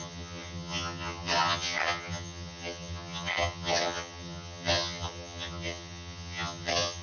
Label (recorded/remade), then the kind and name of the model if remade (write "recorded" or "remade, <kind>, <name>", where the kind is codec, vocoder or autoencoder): remade, vocoder, HiFi-GAN